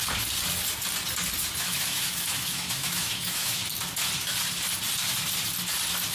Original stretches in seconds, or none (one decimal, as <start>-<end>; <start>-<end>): 0.0-1.6; 3.6-6.1

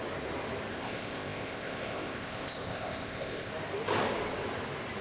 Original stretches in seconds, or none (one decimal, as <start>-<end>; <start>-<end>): 0.0-0.7; 3.5-5.0